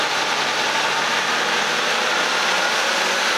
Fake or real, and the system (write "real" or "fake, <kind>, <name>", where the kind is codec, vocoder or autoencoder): real